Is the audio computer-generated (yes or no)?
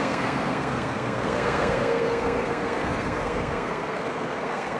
yes